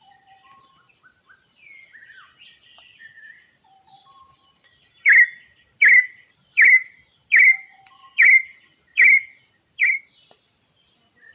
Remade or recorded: recorded